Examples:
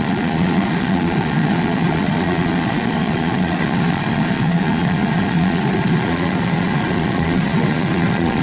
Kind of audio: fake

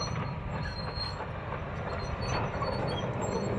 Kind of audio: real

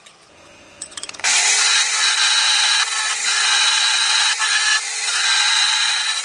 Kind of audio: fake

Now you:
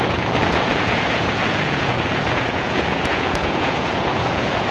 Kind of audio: fake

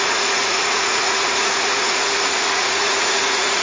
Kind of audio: fake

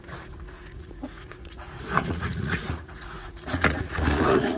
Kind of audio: fake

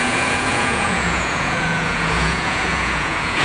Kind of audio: fake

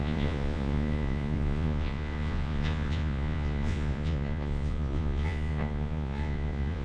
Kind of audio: fake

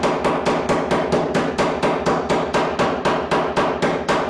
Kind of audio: real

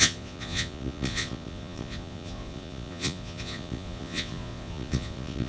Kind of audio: fake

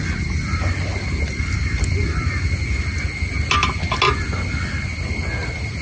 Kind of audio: real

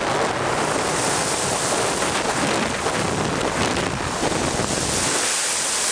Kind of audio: real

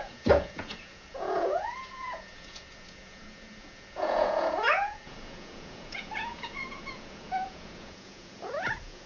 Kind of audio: fake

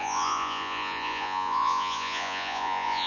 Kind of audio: fake